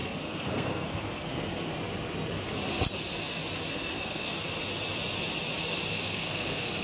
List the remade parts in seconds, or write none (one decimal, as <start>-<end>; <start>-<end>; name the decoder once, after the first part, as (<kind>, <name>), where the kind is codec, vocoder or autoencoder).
0.0-1.7 (codec, SNAC); 3.7-4.3; 5.9-6.8